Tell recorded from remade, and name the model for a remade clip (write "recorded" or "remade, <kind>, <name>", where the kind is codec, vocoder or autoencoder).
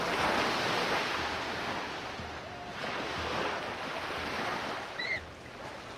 recorded